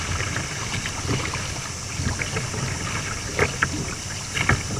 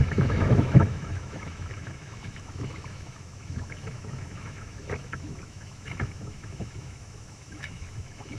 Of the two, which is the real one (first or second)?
first